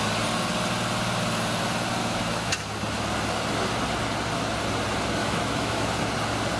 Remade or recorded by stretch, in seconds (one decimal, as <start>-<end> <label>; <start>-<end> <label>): 0.0-2.0 recorded; 2.0-2.5 remade; 2.5-5.2 recorded; 5.2-6.0 remade; 6.0-6.6 recorded